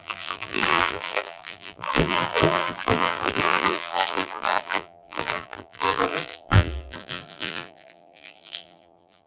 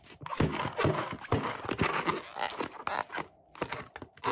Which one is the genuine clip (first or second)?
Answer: second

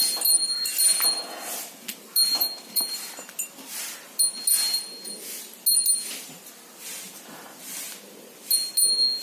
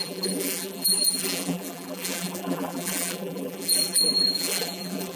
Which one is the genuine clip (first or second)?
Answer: first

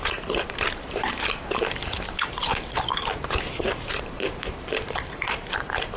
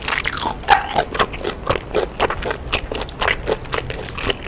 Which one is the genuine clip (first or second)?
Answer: second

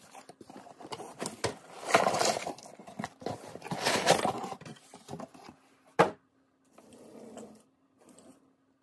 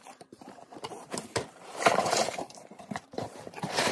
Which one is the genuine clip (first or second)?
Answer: first